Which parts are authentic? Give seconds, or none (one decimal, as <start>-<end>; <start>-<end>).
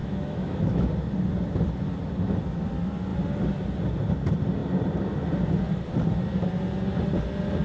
0.9-7.6